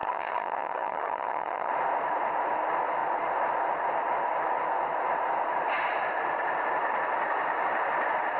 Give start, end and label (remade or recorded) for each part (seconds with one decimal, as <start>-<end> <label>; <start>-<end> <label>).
0.0-1.7 remade; 1.7-8.4 recorded